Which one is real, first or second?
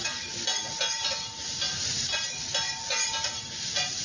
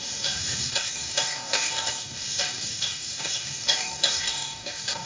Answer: first